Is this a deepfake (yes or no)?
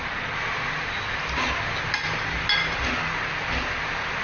no